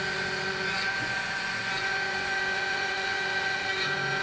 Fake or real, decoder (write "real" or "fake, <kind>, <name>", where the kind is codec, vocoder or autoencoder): fake, vocoder, Vocos